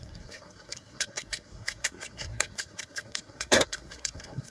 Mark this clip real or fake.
fake